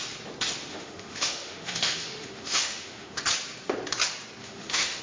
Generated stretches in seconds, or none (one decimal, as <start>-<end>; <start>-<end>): 0.7-3.2; 4.4-5.0